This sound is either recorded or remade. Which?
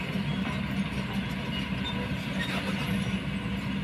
recorded